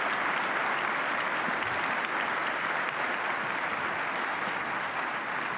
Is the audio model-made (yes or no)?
no